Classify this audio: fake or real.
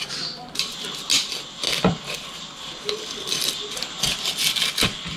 real